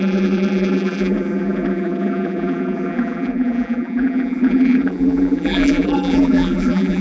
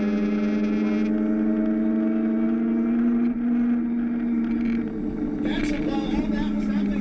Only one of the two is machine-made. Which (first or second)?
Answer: first